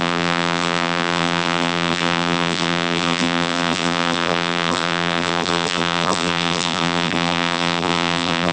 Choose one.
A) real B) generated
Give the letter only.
B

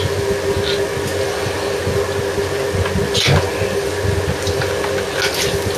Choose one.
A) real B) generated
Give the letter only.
A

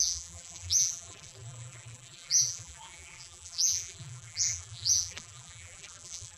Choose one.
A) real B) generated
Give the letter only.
B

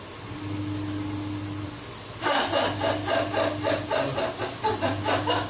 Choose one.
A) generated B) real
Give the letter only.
B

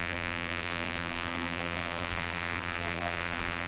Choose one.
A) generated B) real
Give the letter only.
A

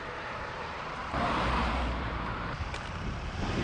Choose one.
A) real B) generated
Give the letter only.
B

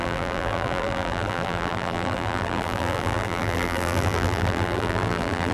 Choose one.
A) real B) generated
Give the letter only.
B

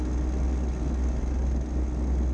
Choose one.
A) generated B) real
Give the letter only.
B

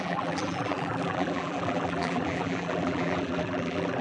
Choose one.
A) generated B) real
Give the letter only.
A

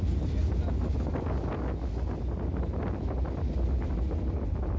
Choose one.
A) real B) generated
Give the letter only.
A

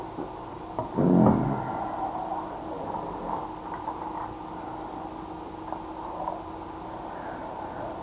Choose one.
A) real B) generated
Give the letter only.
A